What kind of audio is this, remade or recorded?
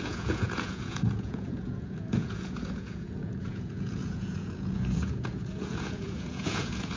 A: remade